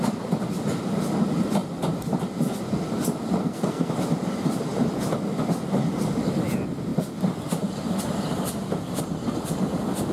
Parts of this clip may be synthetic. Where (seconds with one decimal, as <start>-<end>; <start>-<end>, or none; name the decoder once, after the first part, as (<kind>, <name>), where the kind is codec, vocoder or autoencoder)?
3.4-3.9 (codec, SNAC)